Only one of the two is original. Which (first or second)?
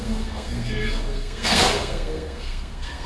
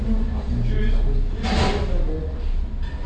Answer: second